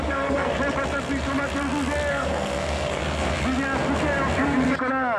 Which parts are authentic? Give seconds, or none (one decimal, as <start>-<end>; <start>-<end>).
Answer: 0.5-2.1; 3.0-5.2